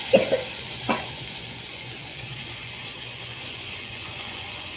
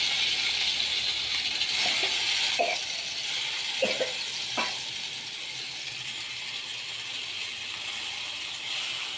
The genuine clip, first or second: second